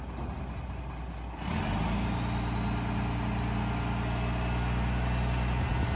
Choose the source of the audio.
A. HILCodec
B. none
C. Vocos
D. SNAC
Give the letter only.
B